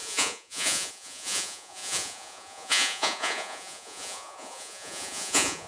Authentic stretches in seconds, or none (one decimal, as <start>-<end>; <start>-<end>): none